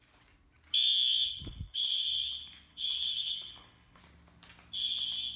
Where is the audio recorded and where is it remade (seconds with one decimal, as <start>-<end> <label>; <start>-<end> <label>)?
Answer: 0.0-1.3 recorded; 1.3-1.9 remade; 1.9-2.7 recorded; 2.7-4.0 remade; 4.0-5.4 recorded